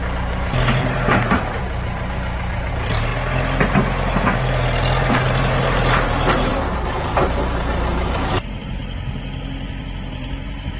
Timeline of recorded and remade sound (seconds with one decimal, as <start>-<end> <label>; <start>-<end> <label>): 0.0-3.1 remade; 3.1-5.1 recorded; 5.1-8.8 remade; 8.8-9.8 recorded; 9.8-10.8 remade